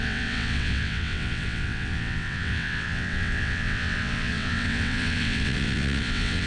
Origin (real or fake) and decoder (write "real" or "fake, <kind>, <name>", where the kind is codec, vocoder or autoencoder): fake, vocoder, WaveNeXt